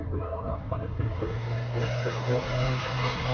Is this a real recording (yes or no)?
no